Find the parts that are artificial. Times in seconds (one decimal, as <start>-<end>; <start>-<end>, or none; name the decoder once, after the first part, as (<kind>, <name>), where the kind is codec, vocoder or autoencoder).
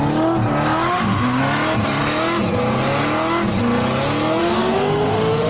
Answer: 0.9-1.4 (autoencoder, DAC-VAE); 4.4-5.5